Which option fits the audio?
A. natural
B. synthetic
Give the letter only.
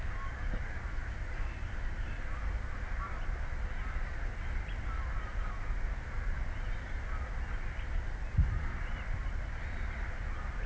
A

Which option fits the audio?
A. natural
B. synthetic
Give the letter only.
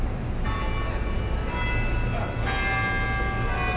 A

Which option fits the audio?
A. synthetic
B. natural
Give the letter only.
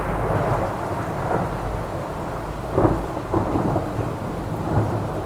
A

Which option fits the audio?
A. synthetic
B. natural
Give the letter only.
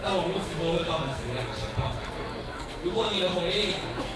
A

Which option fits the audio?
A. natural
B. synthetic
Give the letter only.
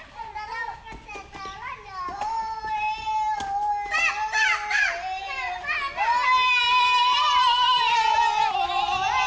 A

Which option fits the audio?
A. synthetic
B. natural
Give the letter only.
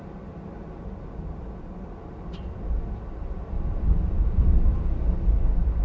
B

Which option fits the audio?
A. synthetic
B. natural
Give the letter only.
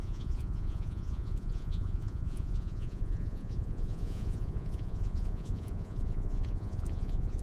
A